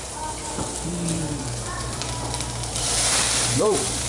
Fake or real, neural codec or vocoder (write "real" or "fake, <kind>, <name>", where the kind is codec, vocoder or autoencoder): fake, vocoder, BigVGAN v2